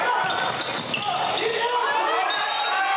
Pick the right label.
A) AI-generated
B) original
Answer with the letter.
B